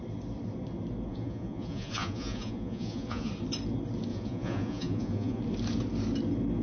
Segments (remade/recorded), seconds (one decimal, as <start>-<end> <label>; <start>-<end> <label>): 0.0-1.1 recorded; 1.1-3.3 remade; 3.3-4.1 recorded; 4.1-5.4 remade; 5.4-6.6 recorded

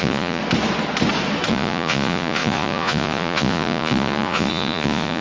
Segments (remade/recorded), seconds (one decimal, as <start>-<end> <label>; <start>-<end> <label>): 0.0-0.4 remade; 0.4-1.5 recorded; 1.5-5.2 remade

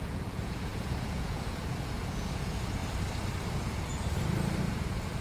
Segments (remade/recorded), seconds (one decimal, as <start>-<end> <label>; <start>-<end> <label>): 0.0-2.8 remade; 2.8-3.5 recorded; 3.5-3.9 remade; 3.9-4.6 recorded; 4.6-5.2 remade

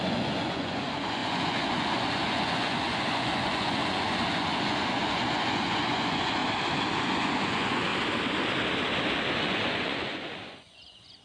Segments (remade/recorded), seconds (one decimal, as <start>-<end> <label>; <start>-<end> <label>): 0.0-6.4 remade; 6.4-7.0 recorded; 7.0-7.9 remade; 7.9-9.4 recorded; 9.4-11.2 remade

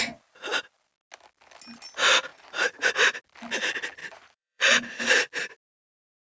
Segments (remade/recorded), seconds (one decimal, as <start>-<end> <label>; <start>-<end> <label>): 0.0-2.3 recorded; 2.3-2.9 remade; 2.9-4.0 recorded; 4.0-5.0 remade; 5.0-6.3 recorded

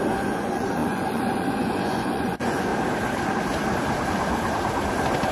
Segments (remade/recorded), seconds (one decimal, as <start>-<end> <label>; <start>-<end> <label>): 0.0-2.7 remade; 2.7-5.3 recorded

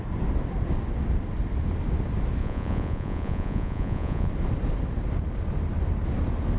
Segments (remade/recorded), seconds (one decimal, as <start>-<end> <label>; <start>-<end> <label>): 0.0-2.4 recorded; 2.4-4.3 remade; 4.3-6.6 recorded

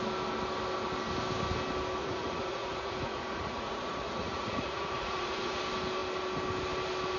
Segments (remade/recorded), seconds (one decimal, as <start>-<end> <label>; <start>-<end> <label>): 0.0-2.0 recorded; 2.0-5.6 remade; 5.6-7.2 recorded